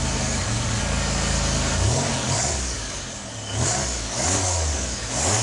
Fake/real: fake